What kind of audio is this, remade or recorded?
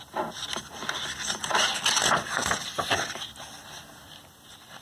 recorded